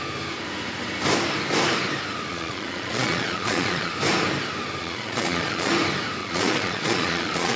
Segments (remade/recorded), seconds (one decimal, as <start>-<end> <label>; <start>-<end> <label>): 0.0-2.3 recorded; 2.3-3.9 remade; 3.9-4.8 recorded; 4.8-5.7 remade; 5.7-6.2 recorded; 6.2-7.6 remade